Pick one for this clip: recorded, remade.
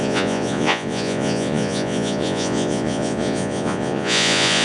remade